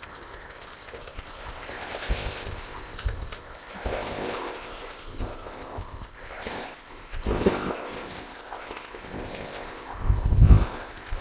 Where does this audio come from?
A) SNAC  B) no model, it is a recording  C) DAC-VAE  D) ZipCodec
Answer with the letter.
D